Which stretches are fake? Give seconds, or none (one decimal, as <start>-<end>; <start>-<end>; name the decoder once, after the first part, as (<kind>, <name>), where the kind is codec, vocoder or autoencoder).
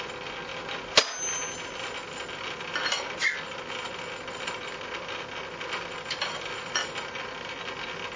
none